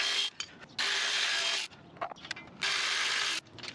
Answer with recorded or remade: recorded